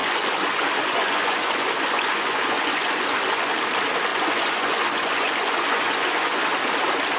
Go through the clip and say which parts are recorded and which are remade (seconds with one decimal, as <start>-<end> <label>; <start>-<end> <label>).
0.0-3.5 remade; 3.5-4.1 recorded; 4.1-6.5 remade; 6.5-7.2 recorded